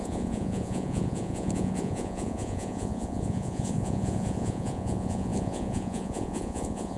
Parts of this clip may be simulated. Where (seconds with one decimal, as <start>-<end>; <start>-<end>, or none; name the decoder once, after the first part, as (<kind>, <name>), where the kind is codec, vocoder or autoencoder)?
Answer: 0.0-7.0 (vocoder, Vocos)